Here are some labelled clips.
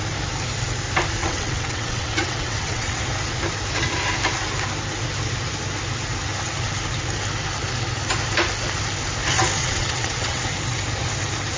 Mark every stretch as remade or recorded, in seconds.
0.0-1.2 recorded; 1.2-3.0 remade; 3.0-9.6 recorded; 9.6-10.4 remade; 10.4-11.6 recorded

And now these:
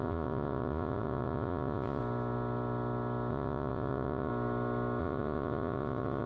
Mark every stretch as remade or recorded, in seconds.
0.0-2.0 remade; 2.0-3.3 recorded; 3.3-4.3 remade; 4.3-5.0 recorded; 5.0-6.3 remade

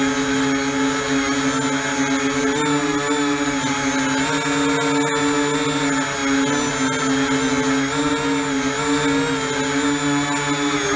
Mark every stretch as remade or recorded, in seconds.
0.0-11.0 recorded